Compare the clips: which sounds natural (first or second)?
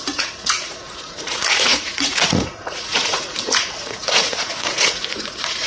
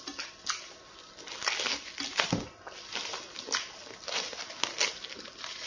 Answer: second